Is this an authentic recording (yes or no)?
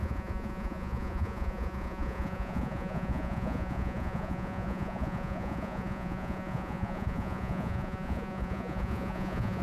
no